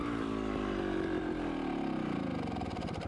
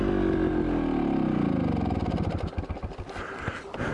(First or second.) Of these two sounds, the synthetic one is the first